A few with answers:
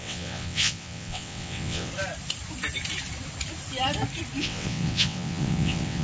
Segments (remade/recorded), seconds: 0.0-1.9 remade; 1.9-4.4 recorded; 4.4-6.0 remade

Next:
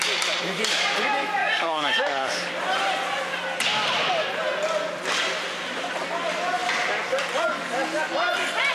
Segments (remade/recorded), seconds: 0.0-1.4 recorded; 1.4-2.5 remade; 2.5-8.7 recorded

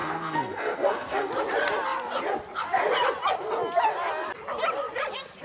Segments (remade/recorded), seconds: 0.0-1.3 remade; 1.3-5.4 recorded

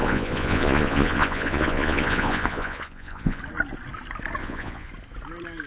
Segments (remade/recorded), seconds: 0.0-3.4 remade; 3.4-4.4 recorded; 4.4-4.9 remade; 4.9-5.7 recorded

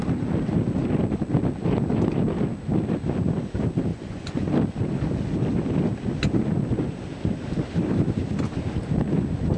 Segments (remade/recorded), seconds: 0.0-3.9 recorded; 3.9-4.5 remade; 4.5-9.6 recorded

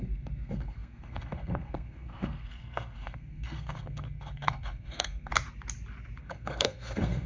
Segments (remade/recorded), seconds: 0.0-5.3 remade; 5.3-6.2 recorded; 6.2-7.3 remade

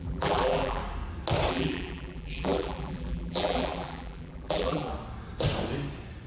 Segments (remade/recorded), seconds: 0.0-0.8 remade; 0.8-1.5 recorded; 1.5-4.9 remade; 4.9-6.3 recorded